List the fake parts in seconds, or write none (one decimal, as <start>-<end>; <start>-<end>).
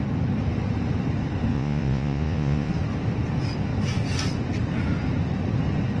1.5-2.7